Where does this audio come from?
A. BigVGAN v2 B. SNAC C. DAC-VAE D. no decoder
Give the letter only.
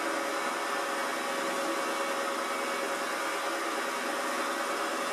D